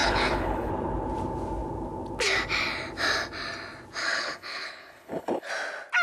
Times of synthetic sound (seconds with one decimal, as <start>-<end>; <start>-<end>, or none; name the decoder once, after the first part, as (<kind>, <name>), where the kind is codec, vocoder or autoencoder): 0.0-0.7 (codec, HILCodec); 4.0-5.5